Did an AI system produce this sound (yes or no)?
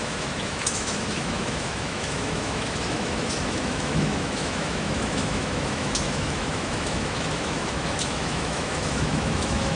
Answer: yes